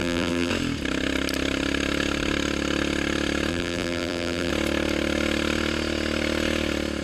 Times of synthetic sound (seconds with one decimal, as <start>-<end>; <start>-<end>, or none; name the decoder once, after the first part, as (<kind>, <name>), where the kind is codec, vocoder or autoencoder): 0.0-0.5 (vocoder, BigVGAN v2); 3.5-4.5